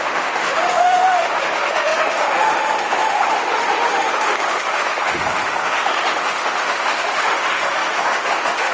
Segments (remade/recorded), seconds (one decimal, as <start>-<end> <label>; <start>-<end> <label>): 0.0-8.7 remade